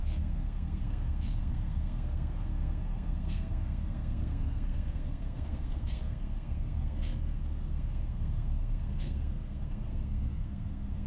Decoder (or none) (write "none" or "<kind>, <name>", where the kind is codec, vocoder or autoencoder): codec, SNAC